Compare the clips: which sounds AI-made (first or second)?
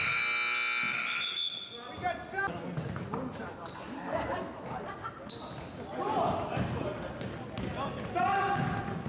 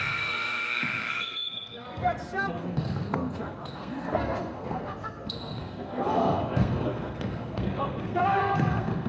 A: second